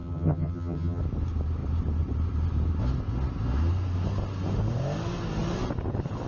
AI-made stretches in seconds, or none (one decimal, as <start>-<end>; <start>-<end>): 0.0-1.0